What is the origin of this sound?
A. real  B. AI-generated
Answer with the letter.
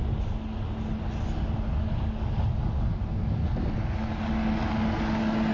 A